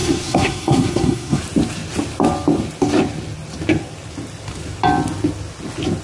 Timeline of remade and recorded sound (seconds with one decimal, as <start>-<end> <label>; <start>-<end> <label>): 0.0-1.4 remade; 1.4-6.0 recorded